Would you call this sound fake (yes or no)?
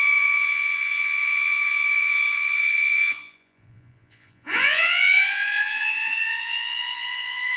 yes